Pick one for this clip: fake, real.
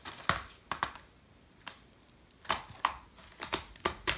real